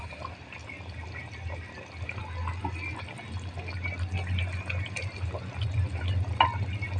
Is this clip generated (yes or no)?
no